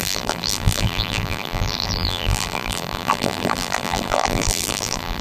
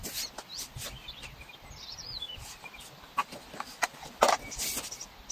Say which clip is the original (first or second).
second